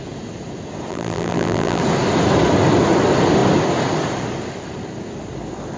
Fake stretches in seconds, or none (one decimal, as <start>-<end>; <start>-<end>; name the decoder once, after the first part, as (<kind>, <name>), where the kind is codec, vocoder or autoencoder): 0.9-1.8 (vocoder, BigVGAN v2)

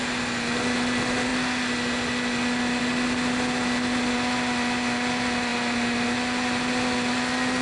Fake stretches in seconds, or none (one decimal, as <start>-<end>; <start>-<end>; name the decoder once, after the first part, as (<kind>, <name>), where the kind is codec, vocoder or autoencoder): none

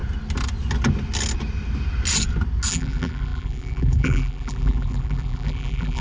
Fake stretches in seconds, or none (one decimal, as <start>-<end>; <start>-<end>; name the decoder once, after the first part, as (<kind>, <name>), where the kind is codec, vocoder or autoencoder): 2.7-6.0 (vocoder, BigVGAN v2)

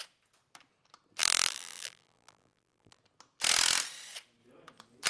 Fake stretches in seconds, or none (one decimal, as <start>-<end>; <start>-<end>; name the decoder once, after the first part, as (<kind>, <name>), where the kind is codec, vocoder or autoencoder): 1.2-3.0 (vocoder, BigVGAN v2)

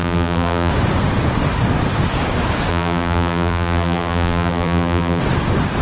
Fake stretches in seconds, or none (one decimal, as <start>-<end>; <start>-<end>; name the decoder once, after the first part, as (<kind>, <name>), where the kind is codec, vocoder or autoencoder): 0.0-0.7 (vocoder, BigVGAN v2); 2.7-5.2